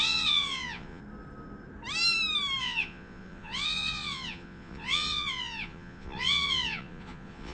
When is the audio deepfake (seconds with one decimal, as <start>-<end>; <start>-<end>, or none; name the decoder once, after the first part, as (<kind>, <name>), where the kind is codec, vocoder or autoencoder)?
0.0-1.0 (vocoder, Vocos); 2.6-7.5